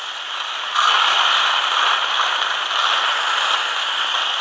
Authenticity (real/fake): real